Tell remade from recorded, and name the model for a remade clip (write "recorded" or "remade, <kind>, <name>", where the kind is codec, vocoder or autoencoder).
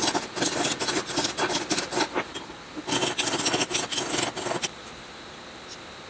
recorded